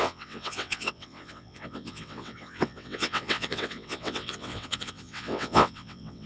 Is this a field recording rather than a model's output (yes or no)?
no